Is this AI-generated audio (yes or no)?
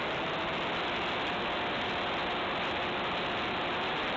no